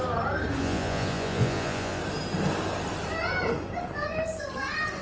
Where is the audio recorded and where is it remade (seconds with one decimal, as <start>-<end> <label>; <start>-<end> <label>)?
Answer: 0.0-0.6 recorded; 0.6-2.0 remade; 2.0-5.0 recorded